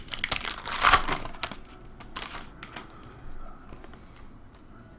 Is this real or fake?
real